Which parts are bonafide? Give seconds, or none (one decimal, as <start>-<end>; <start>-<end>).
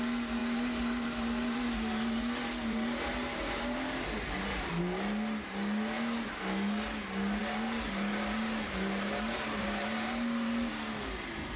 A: 0.0-0.4; 4.8-7.4; 10.7-11.6